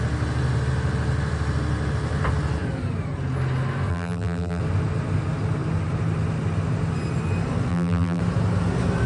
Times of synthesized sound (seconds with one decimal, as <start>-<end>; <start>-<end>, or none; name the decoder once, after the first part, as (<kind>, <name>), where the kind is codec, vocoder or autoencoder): 3.9-4.6 (vocoder, BigVGAN v2); 7.7-8.2